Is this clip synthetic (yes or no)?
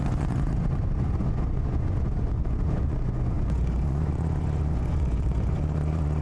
yes